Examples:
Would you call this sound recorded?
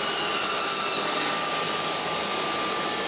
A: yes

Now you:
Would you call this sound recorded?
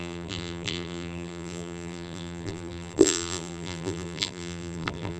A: no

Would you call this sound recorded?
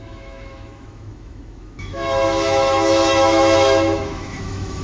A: no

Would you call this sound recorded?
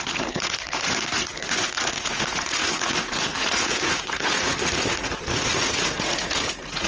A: no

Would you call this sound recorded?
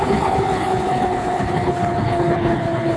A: no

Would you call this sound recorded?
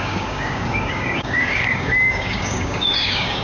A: no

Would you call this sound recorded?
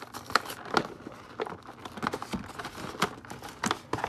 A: yes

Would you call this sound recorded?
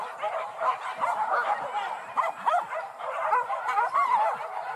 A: no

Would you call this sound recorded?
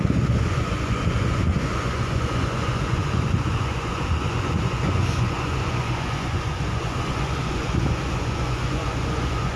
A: no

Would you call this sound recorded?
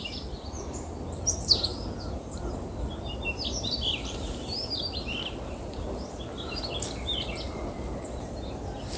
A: yes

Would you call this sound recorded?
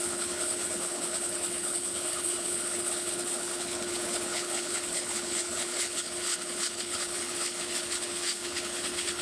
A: no